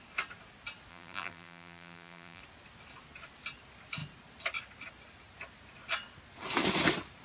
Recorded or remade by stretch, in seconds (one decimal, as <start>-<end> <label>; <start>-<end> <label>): 0.0-0.9 recorded; 0.9-2.4 remade; 2.4-7.2 recorded